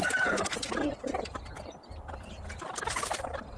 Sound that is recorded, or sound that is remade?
recorded